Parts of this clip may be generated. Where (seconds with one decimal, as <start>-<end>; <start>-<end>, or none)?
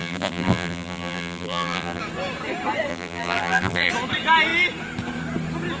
0.0-2.0; 2.9-3.9